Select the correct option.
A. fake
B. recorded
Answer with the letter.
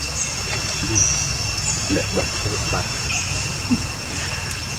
A